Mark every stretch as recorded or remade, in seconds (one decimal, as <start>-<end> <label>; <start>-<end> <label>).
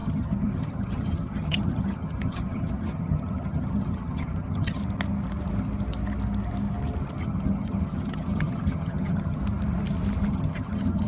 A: 0.0-4.8 remade; 4.8-7.2 recorded; 7.2-9.4 remade; 9.4-10.3 recorded; 10.3-11.1 remade